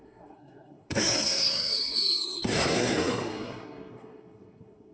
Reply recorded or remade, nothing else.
remade